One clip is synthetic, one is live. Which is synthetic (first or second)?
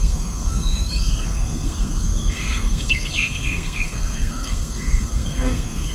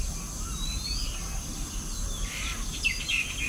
first